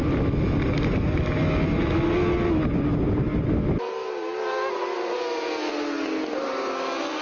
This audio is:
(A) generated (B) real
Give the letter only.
B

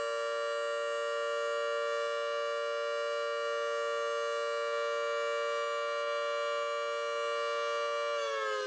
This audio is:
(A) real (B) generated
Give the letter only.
A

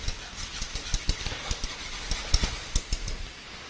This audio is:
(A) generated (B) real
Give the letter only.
B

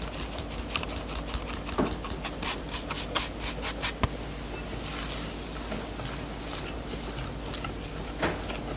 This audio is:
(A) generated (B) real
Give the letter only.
B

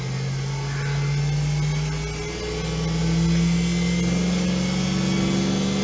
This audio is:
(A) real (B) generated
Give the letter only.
A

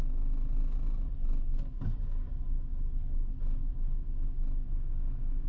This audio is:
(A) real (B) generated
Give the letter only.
A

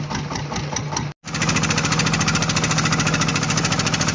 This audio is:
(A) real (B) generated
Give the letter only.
A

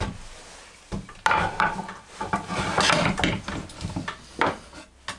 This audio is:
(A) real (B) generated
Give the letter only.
A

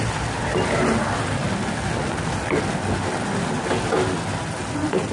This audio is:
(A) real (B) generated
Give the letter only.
A